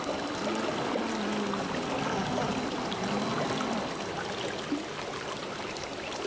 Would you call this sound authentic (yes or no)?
yes